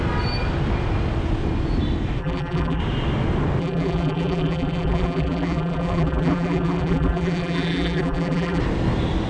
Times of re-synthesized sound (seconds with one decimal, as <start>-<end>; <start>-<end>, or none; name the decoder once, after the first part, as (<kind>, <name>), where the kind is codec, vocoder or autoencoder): 2.2-2.8 (vocoder, BigVGAN v2); 3.6-8.6